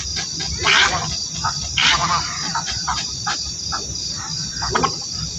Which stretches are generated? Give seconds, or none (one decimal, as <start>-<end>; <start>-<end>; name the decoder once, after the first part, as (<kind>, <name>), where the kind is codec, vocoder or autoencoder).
2.0-4.7 (vocoder, BigVGAN v2)